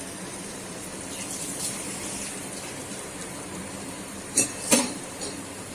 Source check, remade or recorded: remade